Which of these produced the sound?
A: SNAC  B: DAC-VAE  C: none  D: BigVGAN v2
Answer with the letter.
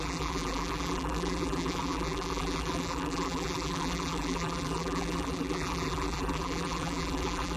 D